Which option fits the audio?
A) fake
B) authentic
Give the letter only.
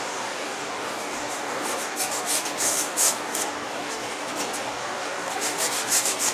A